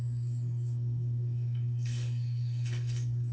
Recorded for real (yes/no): no